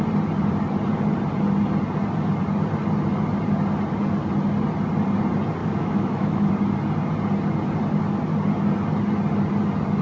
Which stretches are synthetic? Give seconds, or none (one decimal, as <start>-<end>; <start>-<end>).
5.6-6.5